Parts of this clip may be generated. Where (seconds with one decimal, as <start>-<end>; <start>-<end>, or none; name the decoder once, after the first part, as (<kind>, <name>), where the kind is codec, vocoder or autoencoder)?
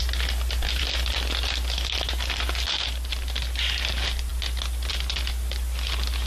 none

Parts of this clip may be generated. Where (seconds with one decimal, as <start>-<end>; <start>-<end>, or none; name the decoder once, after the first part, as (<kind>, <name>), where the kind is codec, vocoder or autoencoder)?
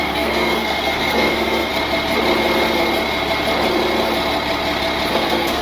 0.0-1.7 (codec, SNAC); 5.1-5.6